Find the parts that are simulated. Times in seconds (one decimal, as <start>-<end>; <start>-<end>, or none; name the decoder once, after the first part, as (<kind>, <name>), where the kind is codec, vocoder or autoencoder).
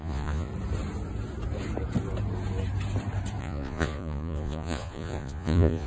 0.0-0.5 (vocoder, Vocos); 3.4-5.9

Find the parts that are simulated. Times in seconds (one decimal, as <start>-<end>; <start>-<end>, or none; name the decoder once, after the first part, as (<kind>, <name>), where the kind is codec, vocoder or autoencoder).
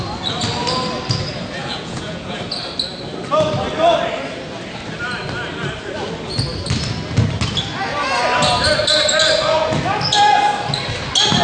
1.6-2.4 (vocoder, Vocos)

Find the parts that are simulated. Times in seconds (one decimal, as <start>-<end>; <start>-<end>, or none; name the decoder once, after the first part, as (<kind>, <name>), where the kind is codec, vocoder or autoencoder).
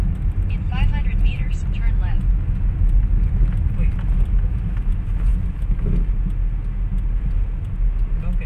none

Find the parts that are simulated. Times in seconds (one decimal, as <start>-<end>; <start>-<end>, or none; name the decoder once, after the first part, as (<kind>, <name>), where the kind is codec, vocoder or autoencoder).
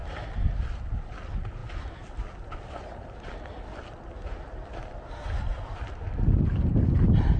none